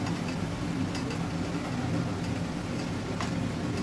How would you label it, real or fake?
real